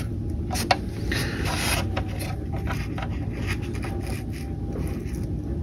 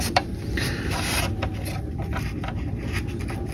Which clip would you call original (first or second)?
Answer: first